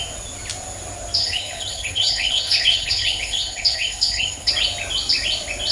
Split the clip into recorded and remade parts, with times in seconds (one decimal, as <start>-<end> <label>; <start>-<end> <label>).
0.0-1.2 recorded; 1.2-4.5 remade; 4.5-5.7 recorded